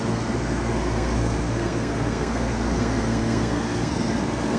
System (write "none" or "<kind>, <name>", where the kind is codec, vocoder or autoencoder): codec, SNAC